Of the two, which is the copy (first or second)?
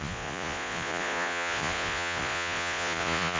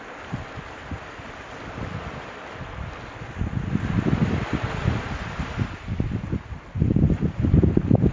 first